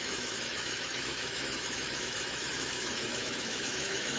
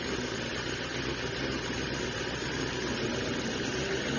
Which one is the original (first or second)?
second